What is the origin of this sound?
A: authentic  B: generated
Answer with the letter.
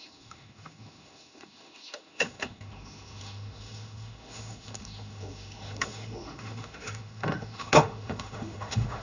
B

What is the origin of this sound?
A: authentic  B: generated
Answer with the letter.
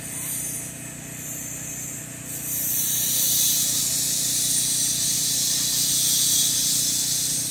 A